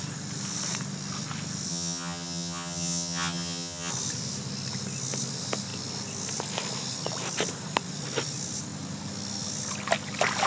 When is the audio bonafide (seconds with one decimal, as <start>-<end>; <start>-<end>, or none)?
0.0-1.7; 3.9-10.5